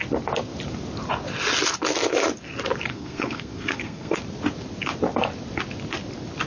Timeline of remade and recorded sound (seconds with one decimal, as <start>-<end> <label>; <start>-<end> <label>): 0.0-2.9 recorded; 2.9-4.2 remade; 4.2-6.5 recorded